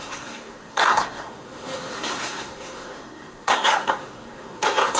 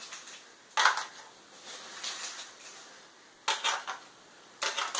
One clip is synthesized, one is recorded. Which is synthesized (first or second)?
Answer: first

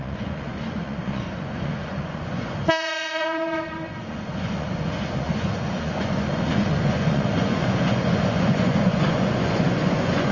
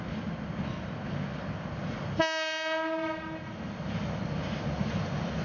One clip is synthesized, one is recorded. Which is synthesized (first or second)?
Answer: first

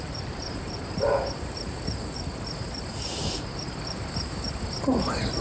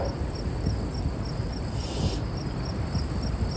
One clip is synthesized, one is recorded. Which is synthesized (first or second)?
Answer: first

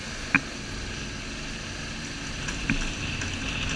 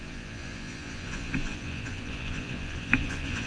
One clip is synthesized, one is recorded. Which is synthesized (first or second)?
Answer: second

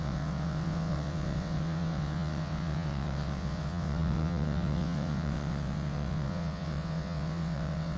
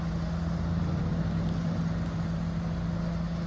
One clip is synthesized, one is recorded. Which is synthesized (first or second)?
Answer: first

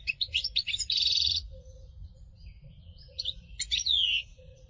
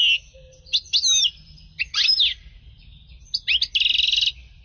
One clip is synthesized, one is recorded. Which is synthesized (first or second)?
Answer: first